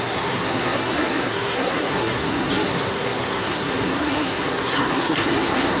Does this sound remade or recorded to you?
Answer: remade